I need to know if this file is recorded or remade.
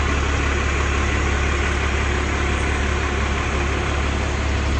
recorded